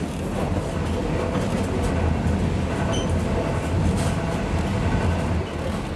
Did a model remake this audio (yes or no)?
no